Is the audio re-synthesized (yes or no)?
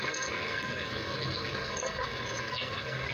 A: yes